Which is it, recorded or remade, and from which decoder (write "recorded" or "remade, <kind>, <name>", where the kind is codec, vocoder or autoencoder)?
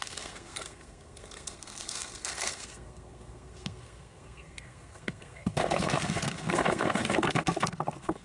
remade, codec, SNAC